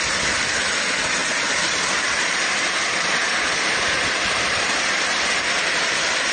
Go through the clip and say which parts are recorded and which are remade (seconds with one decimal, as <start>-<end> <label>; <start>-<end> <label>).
0.0-6.3 recorded